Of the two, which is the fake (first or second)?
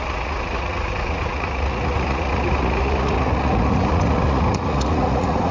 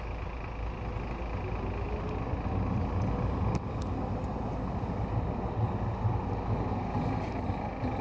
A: first